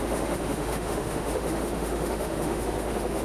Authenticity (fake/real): fake